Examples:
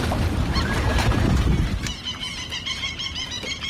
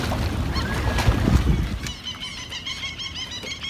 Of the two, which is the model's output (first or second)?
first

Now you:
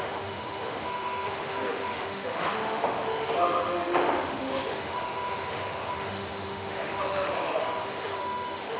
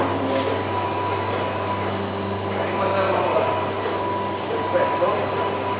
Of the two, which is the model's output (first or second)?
first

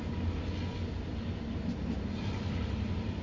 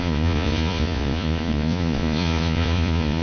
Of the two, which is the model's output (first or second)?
second